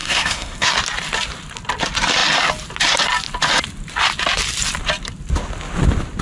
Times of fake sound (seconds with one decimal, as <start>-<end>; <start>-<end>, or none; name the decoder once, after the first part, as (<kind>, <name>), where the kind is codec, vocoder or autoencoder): 0.0-0.7 (codec, SNAC)